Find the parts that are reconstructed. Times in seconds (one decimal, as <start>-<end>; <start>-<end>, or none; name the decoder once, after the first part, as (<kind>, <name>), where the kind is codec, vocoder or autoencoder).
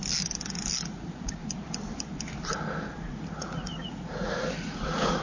0.9-1.4 (vocoder, Vocos); 3.0-5.2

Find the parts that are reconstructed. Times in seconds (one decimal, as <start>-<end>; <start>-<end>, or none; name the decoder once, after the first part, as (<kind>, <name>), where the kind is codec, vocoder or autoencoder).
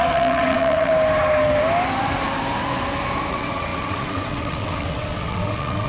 0.0-0.9 (vocoder, WaveNeXt); 3.3-5.9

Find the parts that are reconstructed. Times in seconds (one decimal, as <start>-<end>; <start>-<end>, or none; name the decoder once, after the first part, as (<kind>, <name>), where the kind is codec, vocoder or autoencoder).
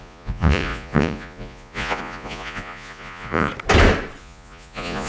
0.0-3.5 (vocoder, Vocos); 4.2-5.1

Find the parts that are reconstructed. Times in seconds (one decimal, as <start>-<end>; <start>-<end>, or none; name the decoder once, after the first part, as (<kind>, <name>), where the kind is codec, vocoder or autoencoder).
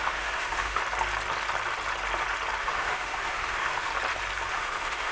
0.0-0.8 (autoencoder, DAC-VAE); 2.6-3.9; 4.5-5.1